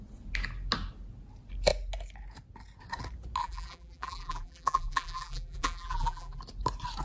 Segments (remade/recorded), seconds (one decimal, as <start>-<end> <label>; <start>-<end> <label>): 0.0-3.4 recorded; 3.4-6.4 remade; 6.4-7.0 recorded